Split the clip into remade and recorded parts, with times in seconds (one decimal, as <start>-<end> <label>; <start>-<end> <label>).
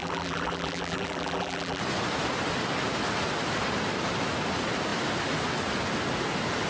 0.0-1.8 remade; 1.8-6.7 recorded